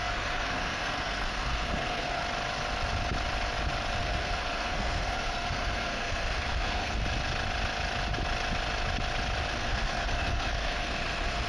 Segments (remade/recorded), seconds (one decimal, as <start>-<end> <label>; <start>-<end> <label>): 0.0-2.2 remade; 2.2-4.0 recorded; 4.0-7.0 remade; 7.0-9.5 recorded; 9.5-11.5 remade